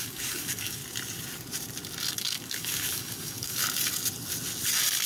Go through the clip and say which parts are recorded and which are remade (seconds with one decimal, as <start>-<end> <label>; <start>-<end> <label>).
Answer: 0.0-0.8 remade; 0.8-2.1 recorded; 2.1-3.6 remade; 3.6-5.1 recorded